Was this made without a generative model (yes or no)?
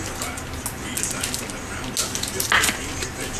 yes